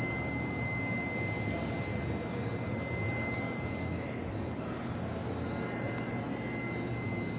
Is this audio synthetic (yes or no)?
no